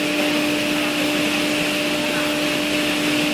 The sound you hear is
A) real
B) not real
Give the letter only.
A